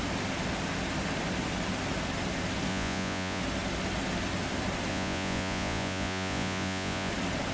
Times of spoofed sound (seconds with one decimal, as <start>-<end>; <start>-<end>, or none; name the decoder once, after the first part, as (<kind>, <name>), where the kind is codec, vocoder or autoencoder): 2.7-3.4 (vocoder, Vocos); 4.9-7.1